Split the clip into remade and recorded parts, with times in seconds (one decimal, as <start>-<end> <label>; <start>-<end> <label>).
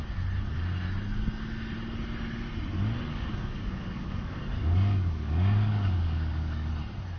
0.0-3.1 recorded; 3.1-6.7 remade; 6.7-7.2 recorded